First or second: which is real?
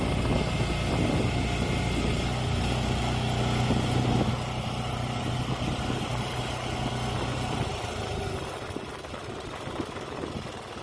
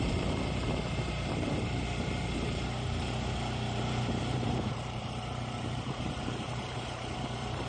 first